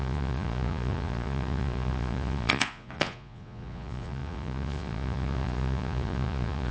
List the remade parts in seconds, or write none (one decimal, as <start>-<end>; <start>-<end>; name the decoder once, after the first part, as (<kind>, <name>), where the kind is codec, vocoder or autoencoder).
0.0-6.7 (vocoder, Vocos)